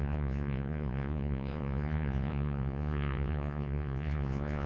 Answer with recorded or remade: remade